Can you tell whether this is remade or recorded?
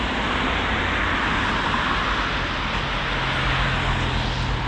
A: recorded